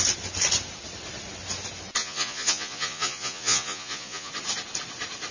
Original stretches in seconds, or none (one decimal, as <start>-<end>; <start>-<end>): 0.0-2.0; 4.3-5.3